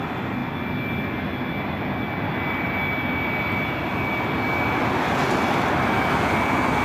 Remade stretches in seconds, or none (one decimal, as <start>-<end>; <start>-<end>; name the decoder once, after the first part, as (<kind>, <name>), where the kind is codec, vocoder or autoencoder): none